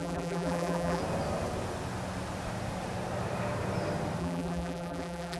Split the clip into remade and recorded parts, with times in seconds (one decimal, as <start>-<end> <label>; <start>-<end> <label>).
0.0-1.0 remade; 1.0-4.2 recorded; 4.2-5.4 remade